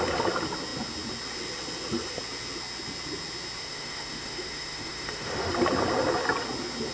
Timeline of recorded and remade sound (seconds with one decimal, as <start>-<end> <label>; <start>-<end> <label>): 0.0-3.6 recorded; 3.6-5.5 remade; 5.5-6.9 recorded

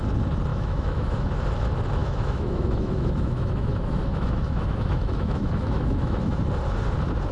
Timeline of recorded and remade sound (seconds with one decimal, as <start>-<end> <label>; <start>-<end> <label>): 0.0-0.5 recorded; 0.5-1.3 remade; 1.3-2.0 recorded; 2.0-6.4 remade; 6.4-7.3 recorded

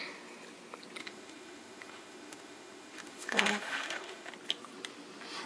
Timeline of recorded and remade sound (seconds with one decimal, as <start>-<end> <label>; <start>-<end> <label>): 0.0-1.0 recorded; 1.0-4.3 remade; 4.3-5.5 recorded

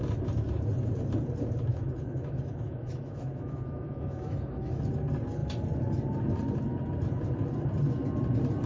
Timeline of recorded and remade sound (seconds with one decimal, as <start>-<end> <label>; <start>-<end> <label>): 0.0-1.7 recorded; 1.7-4.8 remade; 4.8-8.7 recorded